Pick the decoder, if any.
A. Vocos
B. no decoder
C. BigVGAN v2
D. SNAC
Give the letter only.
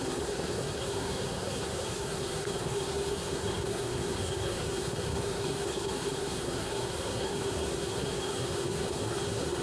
D